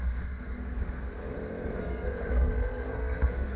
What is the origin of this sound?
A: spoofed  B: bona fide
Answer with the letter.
A